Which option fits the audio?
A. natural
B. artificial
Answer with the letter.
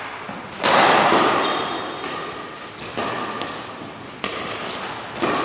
A